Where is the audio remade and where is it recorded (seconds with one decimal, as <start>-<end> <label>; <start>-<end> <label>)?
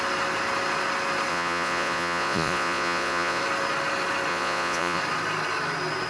0.0-1.3 recorded; 1.3-3.4 remade; 3.4-4.3 recorded; 4.3-5.0 remade; 5.0-6.1 recorded